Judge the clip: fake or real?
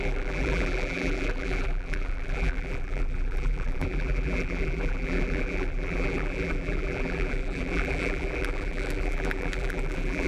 fake